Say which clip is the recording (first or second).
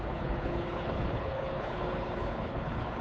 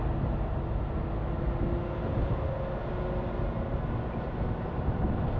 second